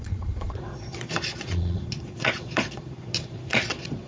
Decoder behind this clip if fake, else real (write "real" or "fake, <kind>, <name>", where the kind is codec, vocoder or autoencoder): fake, vocoder, Vocos